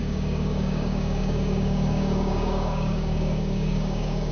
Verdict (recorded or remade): remade